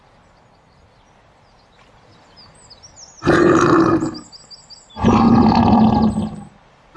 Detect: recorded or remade recorded